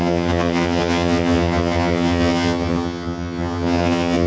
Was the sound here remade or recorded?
remade